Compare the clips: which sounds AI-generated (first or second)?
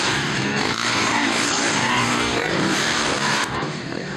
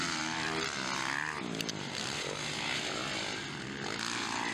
first